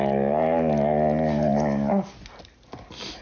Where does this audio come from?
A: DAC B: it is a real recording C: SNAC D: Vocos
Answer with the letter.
B